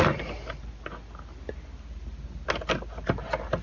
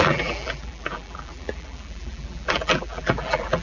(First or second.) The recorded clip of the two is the first